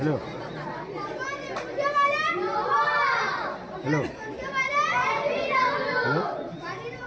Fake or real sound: real